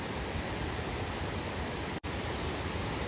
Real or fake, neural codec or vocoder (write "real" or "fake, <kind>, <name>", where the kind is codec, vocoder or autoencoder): fake, vocoder, BigVGAN v2